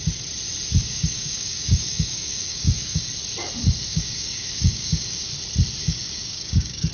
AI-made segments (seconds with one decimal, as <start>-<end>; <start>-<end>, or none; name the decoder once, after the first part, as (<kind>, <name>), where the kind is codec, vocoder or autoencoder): 0.8-3.0 (codec, DAC); 3.9-5.3; 5.8-6.9